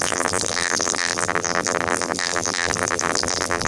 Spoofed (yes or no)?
yes